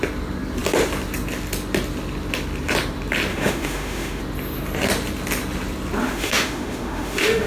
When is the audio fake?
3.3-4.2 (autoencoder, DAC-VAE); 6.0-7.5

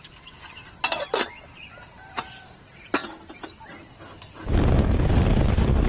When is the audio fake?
none